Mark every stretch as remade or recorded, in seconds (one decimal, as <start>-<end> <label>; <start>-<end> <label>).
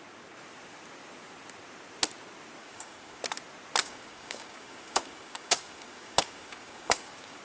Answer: 0.0-2.6 recorded; 2.6-3.2 remade; 3.2-3.8 recorded; 3.8-7.4 remade